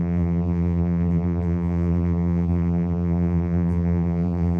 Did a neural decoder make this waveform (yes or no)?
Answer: yes